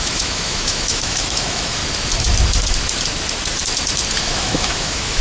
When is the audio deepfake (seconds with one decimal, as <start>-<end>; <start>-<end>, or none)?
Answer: 0.0-1.8; 4.2-5.2